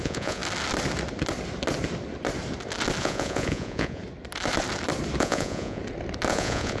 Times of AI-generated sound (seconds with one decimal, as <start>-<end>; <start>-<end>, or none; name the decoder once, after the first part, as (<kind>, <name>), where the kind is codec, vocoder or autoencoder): 0.0-0.4 (vocoder, Vocos); 3.0-4.0; 5.2-5.8; 6.3-6.8